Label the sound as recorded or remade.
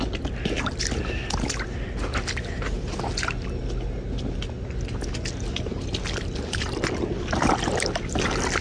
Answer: recorded